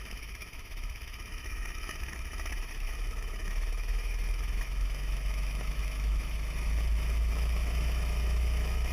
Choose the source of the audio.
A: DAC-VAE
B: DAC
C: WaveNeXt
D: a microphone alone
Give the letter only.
A